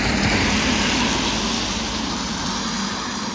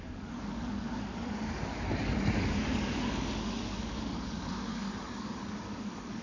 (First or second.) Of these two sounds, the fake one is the second